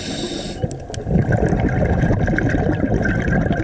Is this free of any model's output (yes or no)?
yes